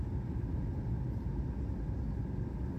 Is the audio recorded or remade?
recorded